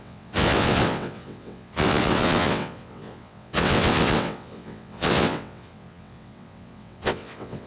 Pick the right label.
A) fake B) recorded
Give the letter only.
A